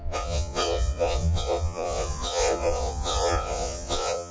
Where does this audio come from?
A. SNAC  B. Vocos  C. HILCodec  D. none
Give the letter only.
B